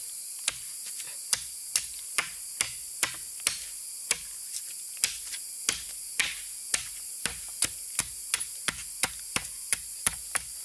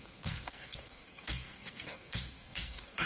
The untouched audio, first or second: first